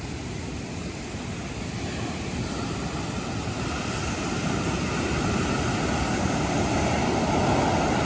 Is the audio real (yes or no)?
yes